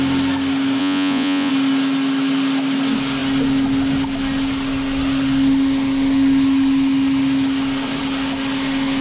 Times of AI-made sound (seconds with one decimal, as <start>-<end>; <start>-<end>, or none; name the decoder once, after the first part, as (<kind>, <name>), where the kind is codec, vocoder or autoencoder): 0.8-1.5 (vocoder, Vocos)